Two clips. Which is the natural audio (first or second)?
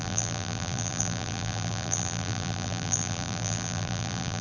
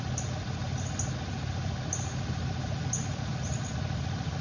second